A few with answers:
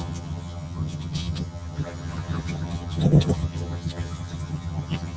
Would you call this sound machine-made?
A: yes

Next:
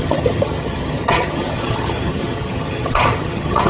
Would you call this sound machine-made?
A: yes